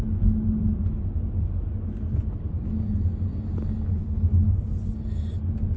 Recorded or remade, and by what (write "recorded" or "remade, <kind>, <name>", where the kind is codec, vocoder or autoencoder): recorded